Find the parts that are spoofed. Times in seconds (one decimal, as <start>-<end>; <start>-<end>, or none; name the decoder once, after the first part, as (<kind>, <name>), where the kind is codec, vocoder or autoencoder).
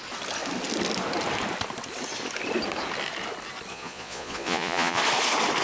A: 3.7-5.0 (vocoder, Vocos)